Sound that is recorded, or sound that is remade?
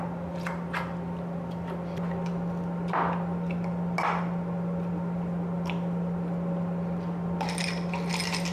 recorded